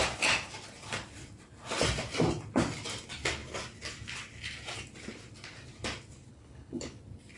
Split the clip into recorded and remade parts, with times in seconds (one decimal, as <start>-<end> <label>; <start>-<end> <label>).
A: 0.0-6.3 recorded; 6.3-7.0 remade; 7.0-7.4 recorded